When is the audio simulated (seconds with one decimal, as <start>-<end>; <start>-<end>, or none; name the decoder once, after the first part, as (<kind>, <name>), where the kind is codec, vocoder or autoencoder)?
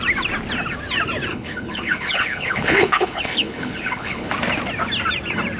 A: 1.3-4.3 (codec, HILCodec)